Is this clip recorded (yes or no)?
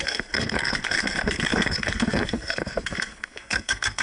no